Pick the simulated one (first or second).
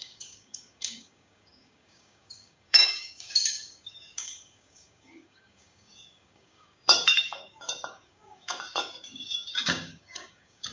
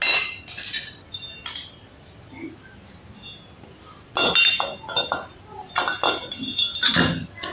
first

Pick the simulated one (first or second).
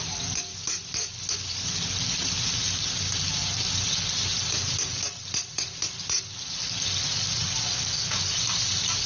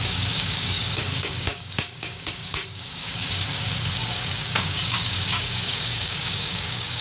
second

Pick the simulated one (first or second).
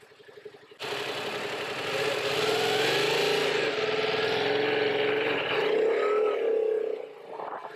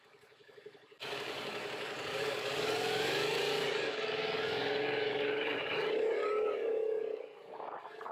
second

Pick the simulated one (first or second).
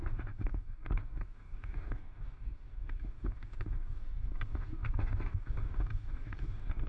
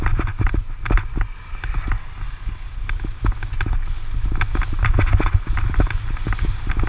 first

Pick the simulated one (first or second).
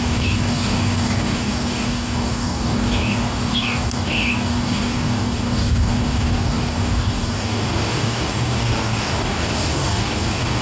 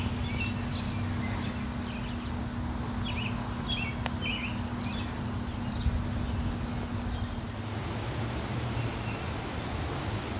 first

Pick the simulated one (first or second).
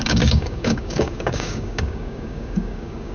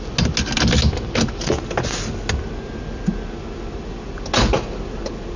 first